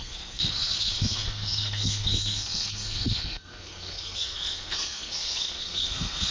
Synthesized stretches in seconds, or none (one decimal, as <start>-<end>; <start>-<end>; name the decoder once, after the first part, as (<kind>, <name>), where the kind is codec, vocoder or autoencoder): 0.0-6.3 (codec, SNAC)